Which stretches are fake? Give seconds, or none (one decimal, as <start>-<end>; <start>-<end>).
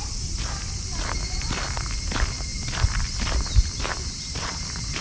none